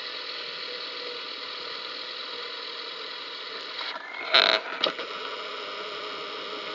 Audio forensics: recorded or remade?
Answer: recorded